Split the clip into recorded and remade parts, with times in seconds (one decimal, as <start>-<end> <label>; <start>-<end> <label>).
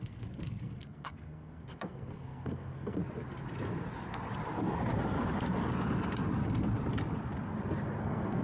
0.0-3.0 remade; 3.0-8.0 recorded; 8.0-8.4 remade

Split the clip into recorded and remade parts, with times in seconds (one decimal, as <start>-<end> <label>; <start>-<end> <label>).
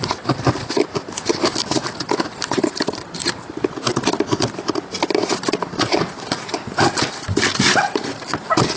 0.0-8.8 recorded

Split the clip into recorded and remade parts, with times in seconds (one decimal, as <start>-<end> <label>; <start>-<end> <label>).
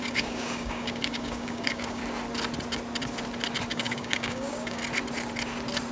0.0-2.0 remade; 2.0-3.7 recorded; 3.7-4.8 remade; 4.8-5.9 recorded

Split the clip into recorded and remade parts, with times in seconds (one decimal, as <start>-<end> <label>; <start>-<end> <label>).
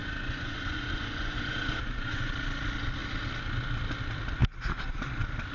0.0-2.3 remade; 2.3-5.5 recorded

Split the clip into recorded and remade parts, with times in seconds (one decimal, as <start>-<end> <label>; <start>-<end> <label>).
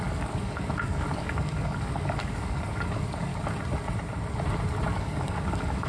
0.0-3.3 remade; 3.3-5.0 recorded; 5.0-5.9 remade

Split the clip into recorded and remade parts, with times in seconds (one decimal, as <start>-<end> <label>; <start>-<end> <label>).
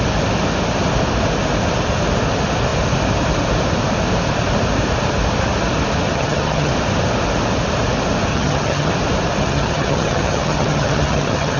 0.0-6.1 recorded; 6.1-6.7 remade; 6.7-8.3 recorded; 8.3-8.9 remade; 8.9-9.4 recorded; 9.4-11.6 remade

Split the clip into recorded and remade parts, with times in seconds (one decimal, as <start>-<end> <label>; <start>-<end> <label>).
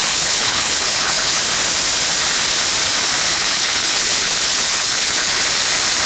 0.0-1.4 remade; 1.4-3.3 recorded; 3.3-5.4 remade; 5.4-6.1 recorded